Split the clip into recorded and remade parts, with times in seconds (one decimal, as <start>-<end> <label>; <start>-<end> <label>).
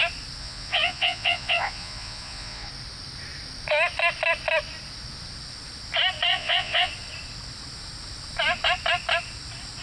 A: 0.0-0.4 recorded; 0.4-2.7 remade; 2.7-6.3 recorded; 6.3-6.9 remade; 6.9-9.8 recorded